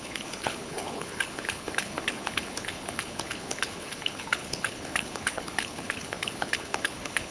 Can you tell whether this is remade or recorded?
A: remade